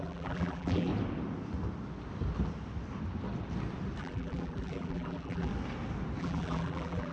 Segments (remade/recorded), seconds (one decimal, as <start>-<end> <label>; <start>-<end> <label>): 0.0-0.9 remade; 0.9-4.0 recorded; 4.0-5.5 remade; 5.5-6.2 recorded; 6.2-7.1 remade